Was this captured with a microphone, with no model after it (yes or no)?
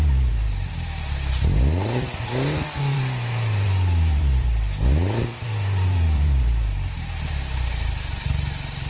no